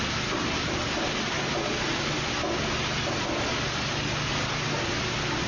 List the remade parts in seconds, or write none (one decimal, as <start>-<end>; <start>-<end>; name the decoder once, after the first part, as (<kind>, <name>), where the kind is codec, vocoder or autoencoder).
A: none